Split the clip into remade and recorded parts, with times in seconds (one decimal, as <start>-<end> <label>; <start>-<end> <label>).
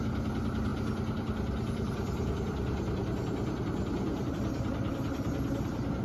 0.0-6.0 recorded